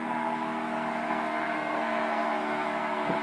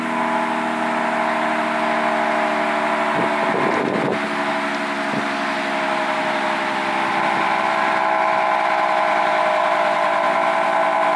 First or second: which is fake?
first